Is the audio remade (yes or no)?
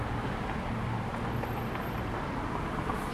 no